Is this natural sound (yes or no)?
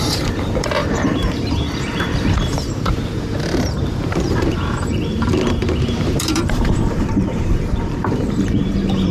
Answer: no